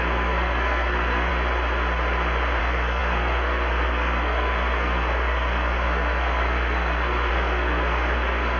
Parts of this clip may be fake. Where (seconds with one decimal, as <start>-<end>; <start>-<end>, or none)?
0.0-1.3; 2.6-8.6